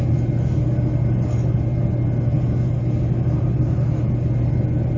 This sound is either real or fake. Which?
real